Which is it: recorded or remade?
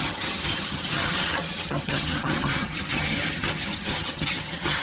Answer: remade